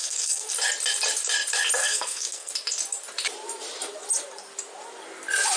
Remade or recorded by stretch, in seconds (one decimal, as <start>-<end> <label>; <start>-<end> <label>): 0.0-0.5 remade; 0.5-1.8 recorded; 1.8-2.5 remade; 2.5-5.6 recorded